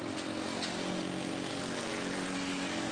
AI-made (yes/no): no